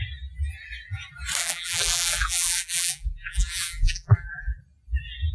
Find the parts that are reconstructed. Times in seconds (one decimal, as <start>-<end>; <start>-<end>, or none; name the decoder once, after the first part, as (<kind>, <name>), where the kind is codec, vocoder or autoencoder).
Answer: 1.4-4.6 (vocoder, BigVGAN v2)